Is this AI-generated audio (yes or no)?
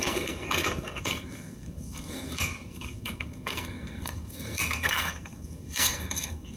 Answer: yes